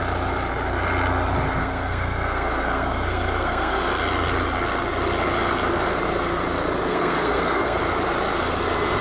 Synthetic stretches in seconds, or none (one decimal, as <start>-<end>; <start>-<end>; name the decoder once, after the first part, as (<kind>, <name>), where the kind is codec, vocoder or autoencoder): 1.6-3.9 (codec, SNAC); 6.9-7.8